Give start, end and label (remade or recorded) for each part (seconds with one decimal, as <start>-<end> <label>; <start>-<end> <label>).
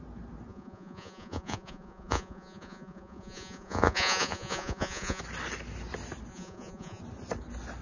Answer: 0.0-0.5 recorded; 0.5-5.2 remade; 5.2-6.3 recorded; 6.3-7.0 remade; 7.0-7.8 recorded